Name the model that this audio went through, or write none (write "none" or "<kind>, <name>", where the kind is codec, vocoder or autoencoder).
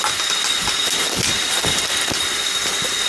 none